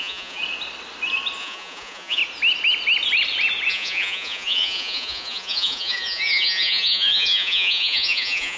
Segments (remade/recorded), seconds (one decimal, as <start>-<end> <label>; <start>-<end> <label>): 0.0-0.4 remade; 0.4-1.4 recorded; 1.4-2.2 remade; 2.2-3.7 recorded; 3.7-8.6 remade